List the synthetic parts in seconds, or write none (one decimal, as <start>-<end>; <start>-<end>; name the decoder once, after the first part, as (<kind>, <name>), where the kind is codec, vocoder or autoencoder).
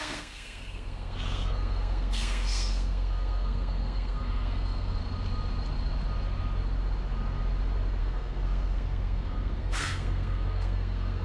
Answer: 0.0-5.0 (codec, SNAC); 8.0-11.2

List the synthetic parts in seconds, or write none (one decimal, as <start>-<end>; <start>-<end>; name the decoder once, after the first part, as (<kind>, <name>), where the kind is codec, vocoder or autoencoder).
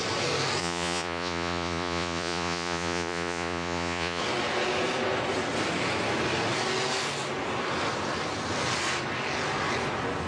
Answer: 0.6-4.2 (vocoder, Vocos)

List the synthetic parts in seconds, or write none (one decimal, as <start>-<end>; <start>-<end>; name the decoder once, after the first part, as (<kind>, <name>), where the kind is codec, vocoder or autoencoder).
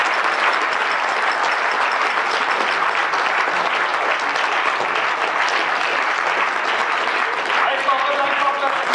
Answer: none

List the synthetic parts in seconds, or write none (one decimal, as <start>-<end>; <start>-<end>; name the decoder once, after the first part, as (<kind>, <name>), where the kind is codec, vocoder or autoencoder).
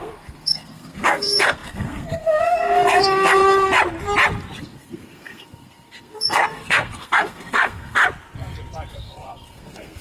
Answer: 0.0-3.4 (codec, SNAC); 4.6-8.0; 8.9-10.0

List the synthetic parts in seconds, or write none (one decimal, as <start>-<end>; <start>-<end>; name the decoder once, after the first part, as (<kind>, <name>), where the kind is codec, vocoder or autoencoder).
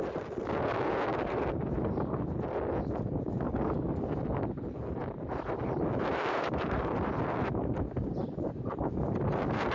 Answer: 1.1-1.8 (vocoder, BigVGAN v2); 5.0-7.1; 8.2-9.0